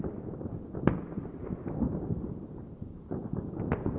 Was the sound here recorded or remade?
recorded